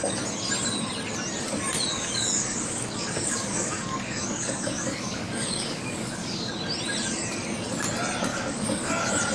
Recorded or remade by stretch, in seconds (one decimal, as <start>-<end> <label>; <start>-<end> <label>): 0.0-1.9 recorded; 1.9-6.5 remade; 6.5-8.3 recorded; 8.3-8.9 remade; 8.9-9.3 recorded